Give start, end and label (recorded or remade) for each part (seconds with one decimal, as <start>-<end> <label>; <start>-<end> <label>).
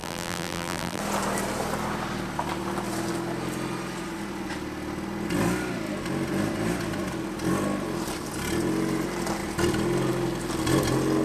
0.0-1.0 remade; 1.0-11.2 recorded